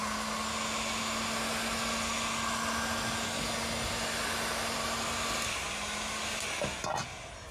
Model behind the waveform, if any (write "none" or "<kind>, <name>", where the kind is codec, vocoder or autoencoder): none